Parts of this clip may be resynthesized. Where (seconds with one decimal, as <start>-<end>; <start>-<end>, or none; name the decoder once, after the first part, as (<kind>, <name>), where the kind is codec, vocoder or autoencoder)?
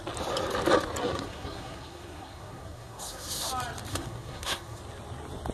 1.0-3.5 (codec, SNAC); 3.9-4.8